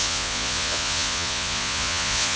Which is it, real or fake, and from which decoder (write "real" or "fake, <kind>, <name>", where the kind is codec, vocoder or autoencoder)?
fake, vocoder, Vocos